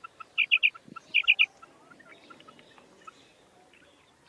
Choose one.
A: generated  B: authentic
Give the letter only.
B